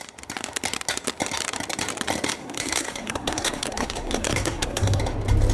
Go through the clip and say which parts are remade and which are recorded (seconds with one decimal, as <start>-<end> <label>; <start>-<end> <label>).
0.0-2.4 recorded; 2.4-5.0 remade; 5.0-5.5 recorded